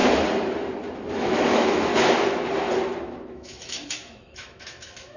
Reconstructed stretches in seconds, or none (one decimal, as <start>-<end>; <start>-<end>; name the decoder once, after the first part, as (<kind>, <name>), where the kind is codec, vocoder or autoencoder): 1.1-1.9 (autoencoder, DAC-VAE); 3.3-5.2